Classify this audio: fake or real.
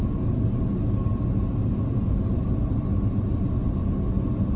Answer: real